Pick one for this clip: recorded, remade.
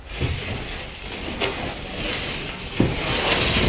recorded